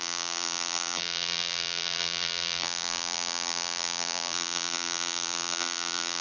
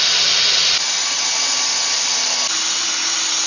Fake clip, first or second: first